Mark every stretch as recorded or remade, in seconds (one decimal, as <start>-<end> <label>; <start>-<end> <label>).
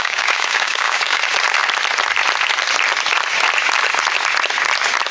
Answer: 0.0-1.2 remade; 1.2-5.1 recorded